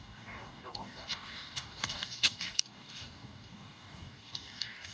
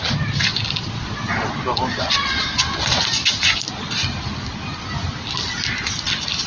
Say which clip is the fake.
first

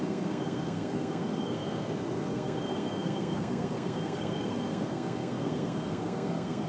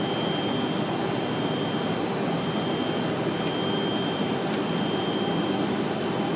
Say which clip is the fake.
first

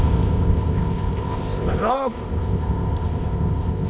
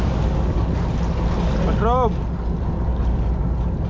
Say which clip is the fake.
first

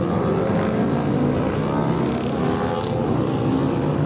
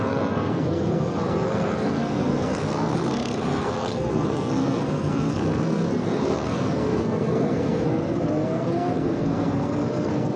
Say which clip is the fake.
second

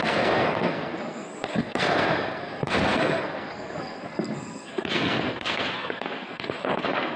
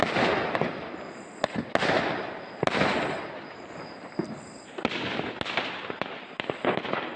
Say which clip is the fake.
first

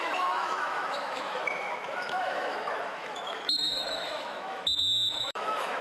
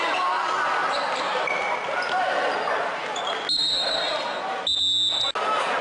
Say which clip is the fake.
first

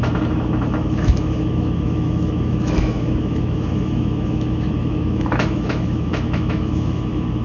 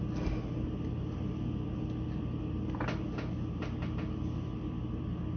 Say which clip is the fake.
first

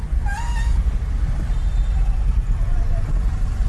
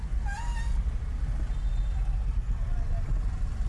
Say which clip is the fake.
first